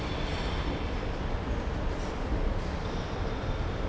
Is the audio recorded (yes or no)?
yes